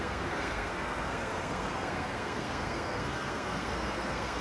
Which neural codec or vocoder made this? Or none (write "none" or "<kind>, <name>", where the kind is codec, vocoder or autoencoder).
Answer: codec, SNAC